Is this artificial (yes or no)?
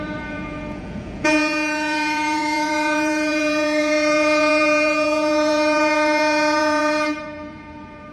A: yes